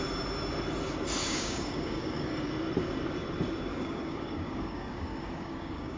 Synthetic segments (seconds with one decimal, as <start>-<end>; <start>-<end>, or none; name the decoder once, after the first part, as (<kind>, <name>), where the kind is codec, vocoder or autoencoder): 1.2-2.5 (codec, DAC); 3.7-6.0